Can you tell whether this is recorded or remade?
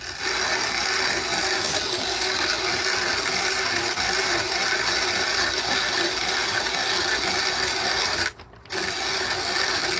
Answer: recorded